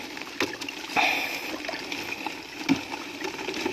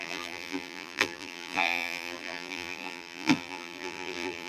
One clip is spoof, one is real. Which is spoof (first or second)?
second